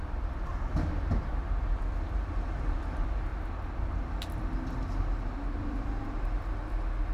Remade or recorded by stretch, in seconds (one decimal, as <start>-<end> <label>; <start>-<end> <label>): 0.0-7.1 recorded